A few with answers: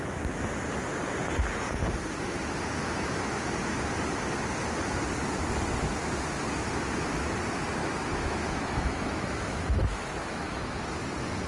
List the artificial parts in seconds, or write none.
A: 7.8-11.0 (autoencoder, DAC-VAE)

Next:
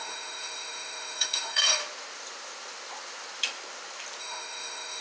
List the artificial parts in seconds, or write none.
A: 0.0-1.8 (autoencoder, DAC-VAE); 4.2-5.0

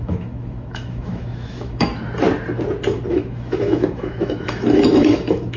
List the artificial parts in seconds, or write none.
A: 0.0-1.9 (autoencoder, DAC-VAE); 3.1-5.6

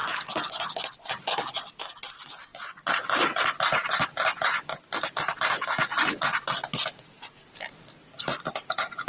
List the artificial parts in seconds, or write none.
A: none

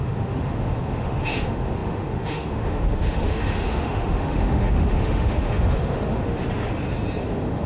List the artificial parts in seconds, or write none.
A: 0.0-6.4 (autoencoder, DAC-VAE); 7.3-7.7

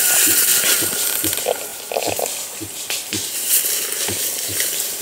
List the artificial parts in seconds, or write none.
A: none